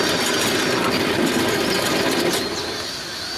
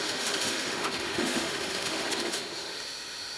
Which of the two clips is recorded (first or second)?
first